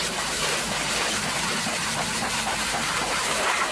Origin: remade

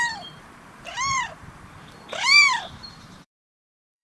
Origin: remade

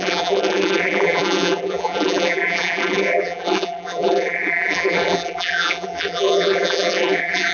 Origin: remade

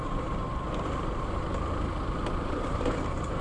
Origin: remade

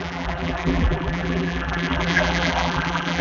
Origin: remade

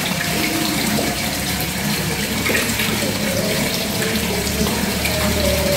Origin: remade